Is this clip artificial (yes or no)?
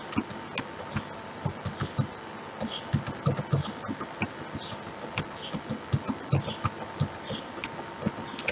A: no